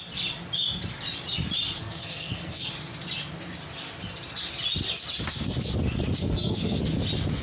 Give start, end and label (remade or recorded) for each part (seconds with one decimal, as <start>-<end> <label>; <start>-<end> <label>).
0.0-1.8 recorded; 1.8-2.7 remade; 2.7-6.2 recorded; 6.2-6.8 remade; 6.8-7.4 recorded